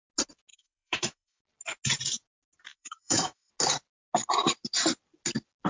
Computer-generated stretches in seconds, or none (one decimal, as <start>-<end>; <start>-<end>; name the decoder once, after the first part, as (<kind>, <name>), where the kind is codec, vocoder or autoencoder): 0.5-1.4 (autoencoder, DAC-VAE); 2.7-3.5